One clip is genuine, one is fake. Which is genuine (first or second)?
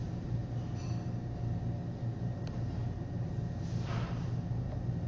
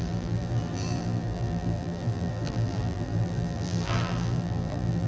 first